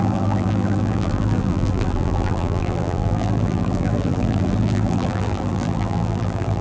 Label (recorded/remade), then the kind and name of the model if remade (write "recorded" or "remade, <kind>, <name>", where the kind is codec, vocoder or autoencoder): remade, vocoder, BigVGAN v2